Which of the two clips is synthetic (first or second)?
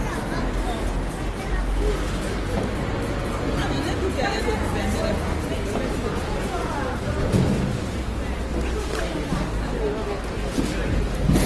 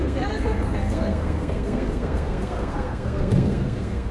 second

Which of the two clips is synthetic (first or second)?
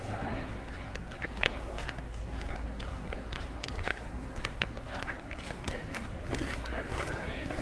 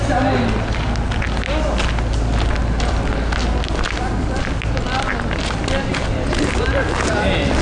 first